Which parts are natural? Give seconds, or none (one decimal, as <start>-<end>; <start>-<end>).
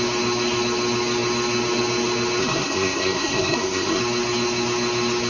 0.0-2.4; 4.0-5.3